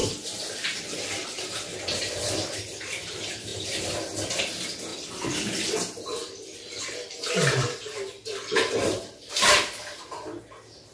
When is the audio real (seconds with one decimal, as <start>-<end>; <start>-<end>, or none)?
2.6-4.9; 9.3-10.1